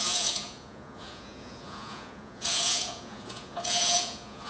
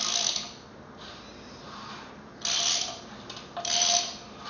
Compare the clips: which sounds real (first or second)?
second